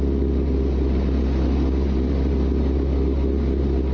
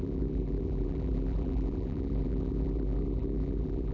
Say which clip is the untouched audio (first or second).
first